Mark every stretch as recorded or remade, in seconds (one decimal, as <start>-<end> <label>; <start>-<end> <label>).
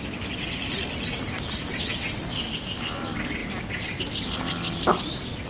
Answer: 0.0-1.7 recorded; 1.7-2.2 remade; 2.2-5.5 recorded